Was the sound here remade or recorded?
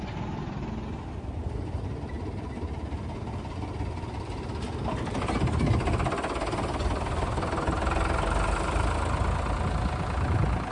recorded